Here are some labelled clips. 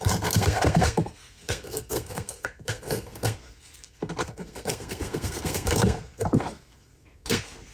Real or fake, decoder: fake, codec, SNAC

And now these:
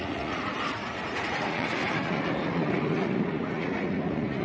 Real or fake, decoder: fake, vocoder, Vocos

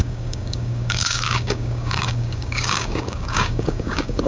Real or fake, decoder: fake, codec, DAC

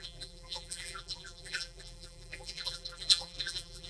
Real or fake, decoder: fake, vocoder, BigVGAN v2